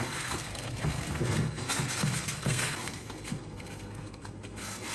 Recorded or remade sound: remade